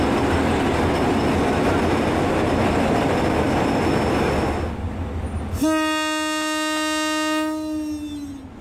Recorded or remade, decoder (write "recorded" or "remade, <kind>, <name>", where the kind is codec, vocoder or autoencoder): recorded